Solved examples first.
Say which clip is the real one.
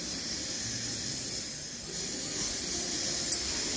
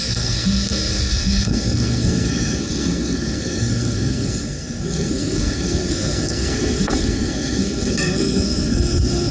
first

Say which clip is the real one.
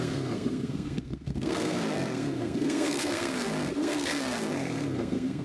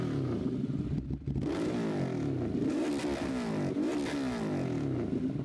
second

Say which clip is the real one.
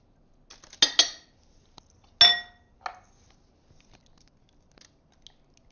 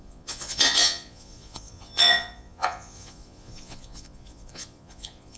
first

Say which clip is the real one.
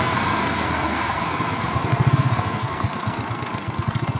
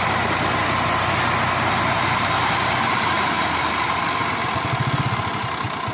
second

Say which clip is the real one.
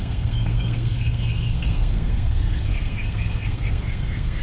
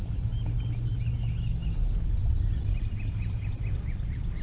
second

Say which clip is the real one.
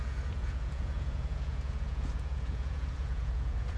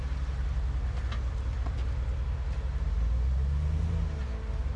second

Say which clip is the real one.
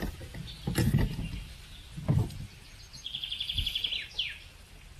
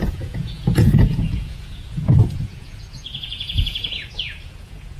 first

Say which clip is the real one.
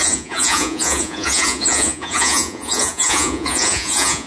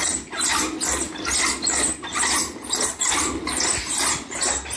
second